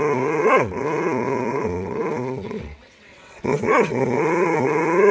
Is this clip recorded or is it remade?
remade